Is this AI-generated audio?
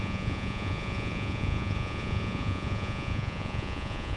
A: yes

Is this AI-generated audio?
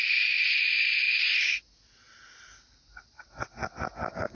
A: no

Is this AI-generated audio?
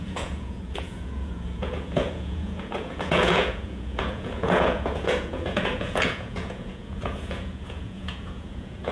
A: yes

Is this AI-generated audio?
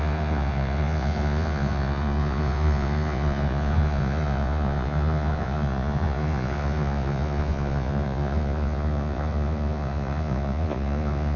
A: yes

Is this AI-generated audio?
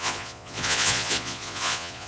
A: yes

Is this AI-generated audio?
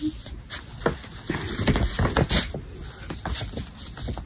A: no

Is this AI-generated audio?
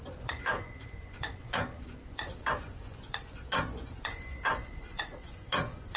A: yes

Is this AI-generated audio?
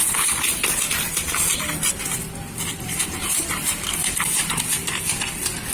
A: no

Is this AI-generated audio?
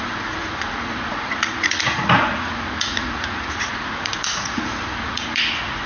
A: yes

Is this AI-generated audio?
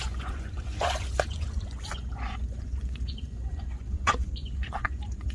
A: yes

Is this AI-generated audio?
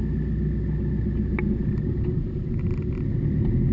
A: no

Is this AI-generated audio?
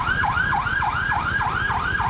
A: no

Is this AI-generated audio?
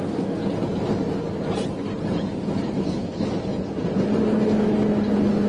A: no